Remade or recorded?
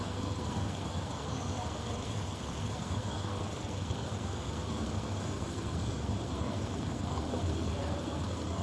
remade